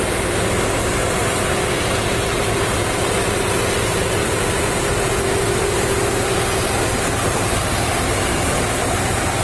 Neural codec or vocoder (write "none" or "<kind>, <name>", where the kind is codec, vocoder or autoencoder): vocoder, BigVGAN v2